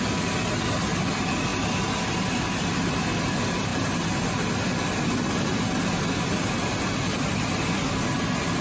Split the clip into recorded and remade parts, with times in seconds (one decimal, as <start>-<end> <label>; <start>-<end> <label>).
0.0-8.6 recorded